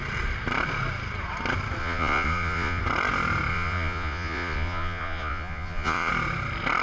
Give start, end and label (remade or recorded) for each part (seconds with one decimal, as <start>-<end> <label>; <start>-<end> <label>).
0.0-1.8 recorded; 1.8-2.8 remade; 2.8-3.5 recorded; 3.5-6.1 remade; 6.1-6.8 recorded